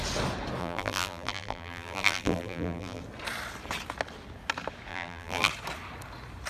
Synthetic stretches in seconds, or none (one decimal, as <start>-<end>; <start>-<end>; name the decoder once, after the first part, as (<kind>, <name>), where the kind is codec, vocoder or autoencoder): 0.6-3.0 (vocoder, BigVGAN v2); 4.9-5.5